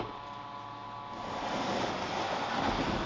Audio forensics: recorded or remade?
recorded